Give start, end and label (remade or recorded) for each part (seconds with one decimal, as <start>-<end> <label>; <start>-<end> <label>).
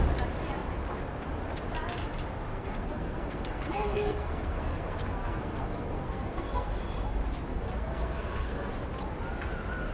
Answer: 0.0-2.5 recorded; 2.5-6.8 remade; 6.8-7.5 recorded; 7.5-8.7 remade; 8.7-9.9 recorded